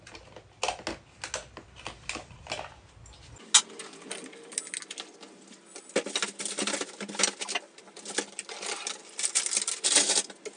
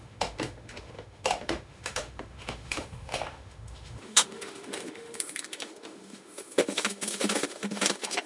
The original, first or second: first